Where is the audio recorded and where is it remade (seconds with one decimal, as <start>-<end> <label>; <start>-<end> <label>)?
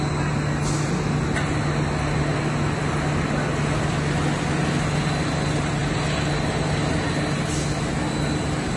0.0-8.8 recorded